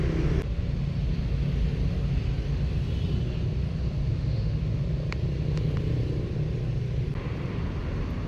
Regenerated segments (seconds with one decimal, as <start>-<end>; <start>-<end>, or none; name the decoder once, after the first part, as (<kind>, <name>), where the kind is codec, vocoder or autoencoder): 4.1-4.8 (autoencoder, DAC-VAE)